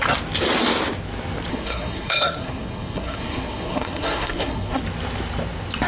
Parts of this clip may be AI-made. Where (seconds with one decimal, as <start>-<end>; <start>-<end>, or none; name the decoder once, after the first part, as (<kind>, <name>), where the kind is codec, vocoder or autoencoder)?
1.5-4.8 (codec, SNAC)